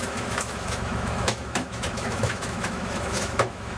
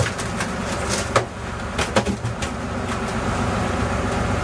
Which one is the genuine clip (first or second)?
second